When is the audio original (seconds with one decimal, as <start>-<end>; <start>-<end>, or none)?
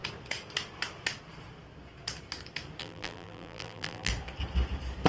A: 0.0-2.8; 4.1-5.1